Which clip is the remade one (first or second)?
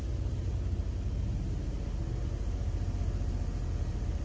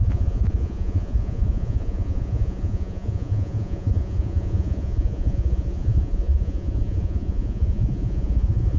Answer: second